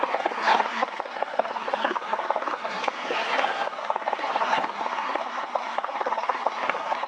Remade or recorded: remade